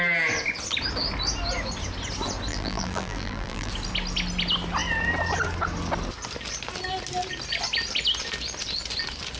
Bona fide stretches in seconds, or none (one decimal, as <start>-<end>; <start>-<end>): 0.0-2.5; 3.7-9.4